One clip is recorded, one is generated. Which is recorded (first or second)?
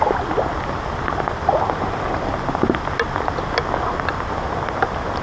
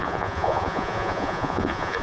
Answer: first